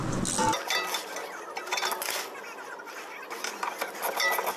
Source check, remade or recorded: recorded